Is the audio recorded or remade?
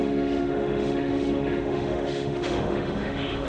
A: remade